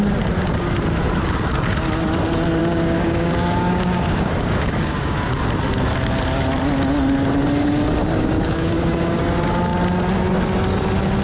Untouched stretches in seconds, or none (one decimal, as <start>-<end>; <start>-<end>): 0.0-2.6; 5.3-8.0; 9.2-11.2